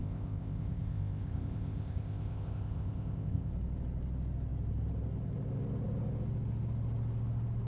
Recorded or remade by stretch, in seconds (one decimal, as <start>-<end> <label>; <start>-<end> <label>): 0.0-3.5 remade; 3.5-7.7 recorded